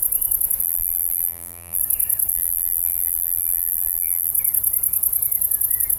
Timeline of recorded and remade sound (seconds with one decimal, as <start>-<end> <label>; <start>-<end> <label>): 0.0-0.6 recorded; 0.6-1.8 remade; 1.8-2.3 recorded; 2.3-4.3 remade; 4.3-6.0 recorded